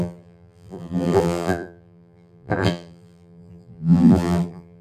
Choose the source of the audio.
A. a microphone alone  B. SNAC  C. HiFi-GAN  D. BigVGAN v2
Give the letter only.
D